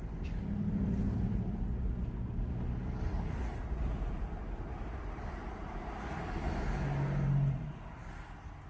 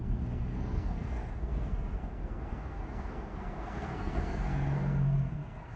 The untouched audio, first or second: first